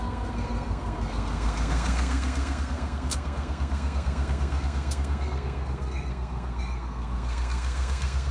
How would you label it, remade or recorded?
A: remade